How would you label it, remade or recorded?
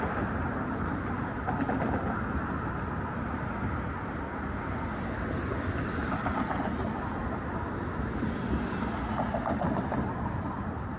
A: recorded